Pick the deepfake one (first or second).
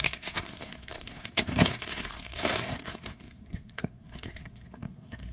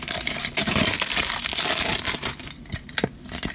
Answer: first